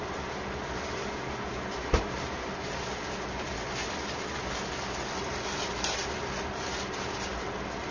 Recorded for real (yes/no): yes